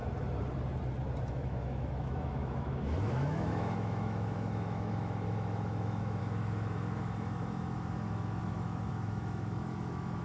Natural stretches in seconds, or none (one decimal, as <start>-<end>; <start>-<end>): 0.0-1.3

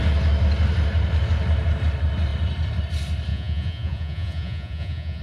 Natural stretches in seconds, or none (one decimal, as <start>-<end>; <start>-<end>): 0.0-3.3

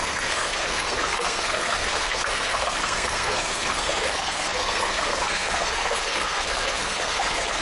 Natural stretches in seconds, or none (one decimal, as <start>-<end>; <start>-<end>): none

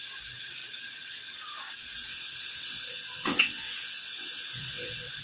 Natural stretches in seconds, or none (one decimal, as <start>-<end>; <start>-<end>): 0.0-2.1